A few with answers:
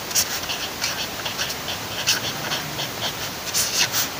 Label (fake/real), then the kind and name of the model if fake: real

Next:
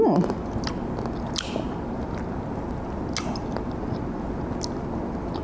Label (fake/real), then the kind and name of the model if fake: real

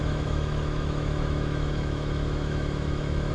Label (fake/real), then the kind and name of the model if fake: fake, autoencoder, DAC-VAE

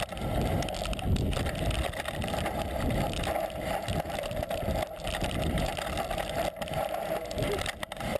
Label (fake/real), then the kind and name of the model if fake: real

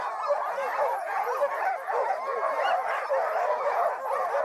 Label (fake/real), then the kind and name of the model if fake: real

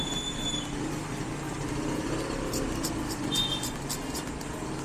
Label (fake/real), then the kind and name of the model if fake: real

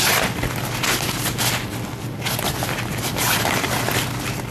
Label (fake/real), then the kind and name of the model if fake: real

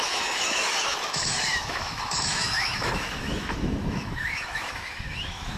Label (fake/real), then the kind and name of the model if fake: fake, autoencoder, DAC-VAE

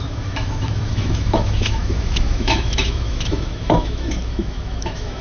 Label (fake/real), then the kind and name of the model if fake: fake, autoencoder, DAC-VAE